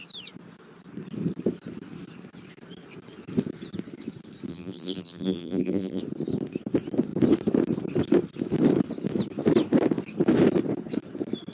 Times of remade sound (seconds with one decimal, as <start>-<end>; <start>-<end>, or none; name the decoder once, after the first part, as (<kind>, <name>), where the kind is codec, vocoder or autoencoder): 4.5-6.0 (vocoder, BigVGAN v2)